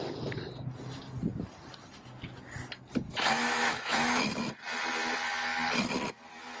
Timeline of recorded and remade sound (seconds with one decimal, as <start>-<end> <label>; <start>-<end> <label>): 0.0-3.4 recorded; 3.4-4.2 remade; 4.2-6.6 recorded